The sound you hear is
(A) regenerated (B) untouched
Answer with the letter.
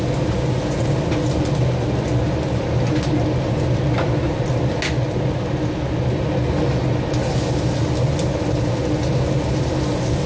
B